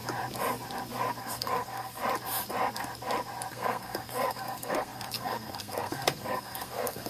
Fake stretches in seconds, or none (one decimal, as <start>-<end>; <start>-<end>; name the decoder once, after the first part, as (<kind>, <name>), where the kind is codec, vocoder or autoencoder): 1.2-2.0 (codec, SNAC); 3.5-7.1

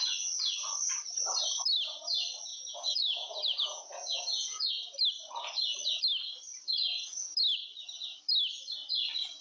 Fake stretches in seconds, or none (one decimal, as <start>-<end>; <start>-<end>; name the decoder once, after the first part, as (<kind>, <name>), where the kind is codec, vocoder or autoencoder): 2.5-4.7 (vocoder, Vocos)

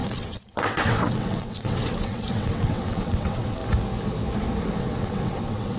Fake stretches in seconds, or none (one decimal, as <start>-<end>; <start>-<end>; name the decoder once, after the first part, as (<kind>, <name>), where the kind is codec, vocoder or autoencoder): 0.0-3.6 (vocoder, WaveNeXt); 4.8-5.8

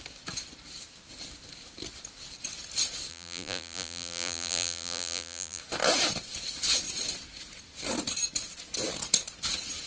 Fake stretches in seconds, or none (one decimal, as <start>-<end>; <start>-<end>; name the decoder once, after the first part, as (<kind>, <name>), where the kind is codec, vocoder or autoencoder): 3.1-5.6 (vocoder, BigVGAN v2)

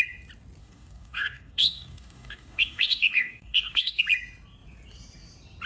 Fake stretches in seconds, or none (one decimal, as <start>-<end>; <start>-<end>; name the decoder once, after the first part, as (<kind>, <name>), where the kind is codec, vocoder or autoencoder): 0.6-4.0 (codec, DAC)

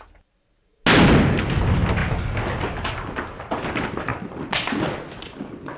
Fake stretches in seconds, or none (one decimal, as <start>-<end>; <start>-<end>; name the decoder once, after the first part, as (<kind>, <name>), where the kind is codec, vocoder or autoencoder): none

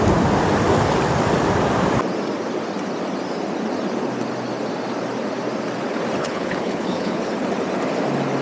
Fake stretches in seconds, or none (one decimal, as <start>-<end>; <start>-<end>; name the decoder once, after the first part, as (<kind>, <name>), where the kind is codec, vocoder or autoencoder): 6.2-7.3 (codec, HILCodec)